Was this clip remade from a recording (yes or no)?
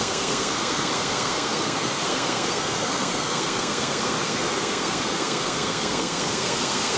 yes